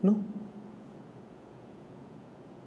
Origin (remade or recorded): remade